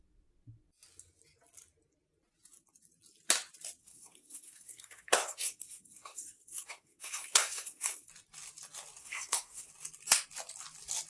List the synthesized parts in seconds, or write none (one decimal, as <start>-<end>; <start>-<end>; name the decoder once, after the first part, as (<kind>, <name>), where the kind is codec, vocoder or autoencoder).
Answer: 3.8-8.1 (codec, SNAC); 9.0-9.7